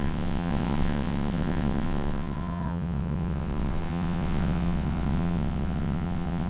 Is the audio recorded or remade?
remade